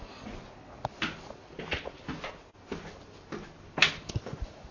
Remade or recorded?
recorded